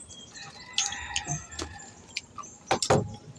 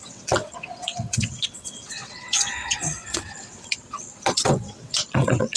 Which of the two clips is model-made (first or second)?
second